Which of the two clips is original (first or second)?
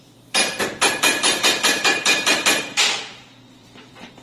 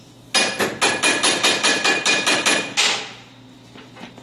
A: second